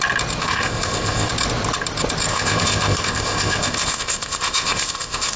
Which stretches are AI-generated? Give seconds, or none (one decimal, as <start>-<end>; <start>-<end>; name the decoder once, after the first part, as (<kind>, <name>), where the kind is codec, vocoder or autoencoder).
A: 0.4-1.3 (codec, ZipCodec); 2.3-5.4